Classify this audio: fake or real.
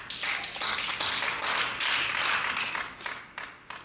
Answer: real